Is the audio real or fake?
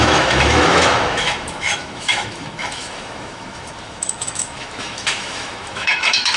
fake